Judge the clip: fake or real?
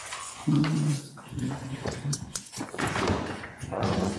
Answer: fake